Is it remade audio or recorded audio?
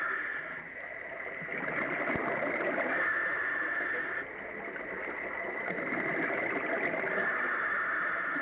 recorded